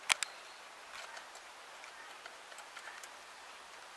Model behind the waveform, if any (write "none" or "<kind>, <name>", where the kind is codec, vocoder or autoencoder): none